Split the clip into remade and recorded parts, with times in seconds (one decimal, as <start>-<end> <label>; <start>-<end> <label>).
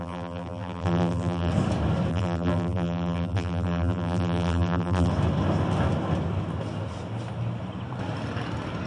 0.0-1.5 remade; 1.5-2.1 recorded; 2.1-5.1 remade; 5.1-8.9 recorded